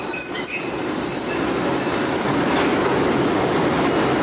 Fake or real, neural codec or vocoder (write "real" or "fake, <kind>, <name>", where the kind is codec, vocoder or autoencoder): real